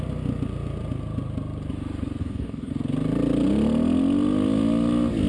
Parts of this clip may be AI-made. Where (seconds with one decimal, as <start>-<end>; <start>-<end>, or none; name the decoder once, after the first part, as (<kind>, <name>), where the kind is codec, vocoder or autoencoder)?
2.2-2.7 (codec, DAC)